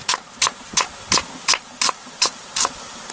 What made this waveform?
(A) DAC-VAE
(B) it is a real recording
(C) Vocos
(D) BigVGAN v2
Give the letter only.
B